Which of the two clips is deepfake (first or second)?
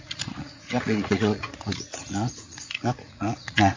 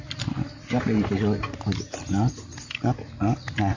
first